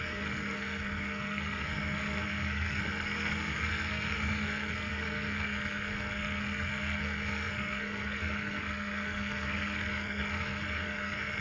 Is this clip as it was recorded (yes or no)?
no